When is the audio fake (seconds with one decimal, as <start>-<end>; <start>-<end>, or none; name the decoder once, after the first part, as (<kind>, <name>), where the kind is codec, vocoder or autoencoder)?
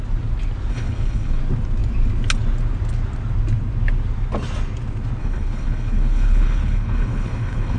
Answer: 0.7-1.4 (codec, HILCodec); 5.2-7.8